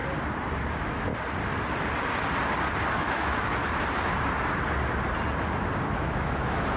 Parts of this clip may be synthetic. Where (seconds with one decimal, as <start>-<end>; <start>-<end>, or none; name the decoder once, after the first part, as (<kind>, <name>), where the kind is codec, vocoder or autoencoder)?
0.7-1.1 (autoencoder, DAC-VAE); 2.9-3.6; 5.8-6.8